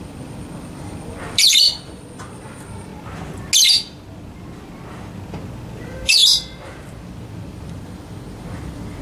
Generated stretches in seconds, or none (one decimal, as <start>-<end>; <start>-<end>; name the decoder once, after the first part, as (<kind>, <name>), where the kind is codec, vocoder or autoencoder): 0.0-2.9 (vocoder, BigVGAN v2); 5.8-9.0